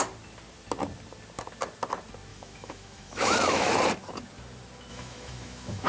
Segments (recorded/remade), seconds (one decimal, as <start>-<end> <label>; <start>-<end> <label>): 0.0-2.3 recorded; 2.3-3.8 remade; 3.8-4.9 recorded; 4.9-5.9 remade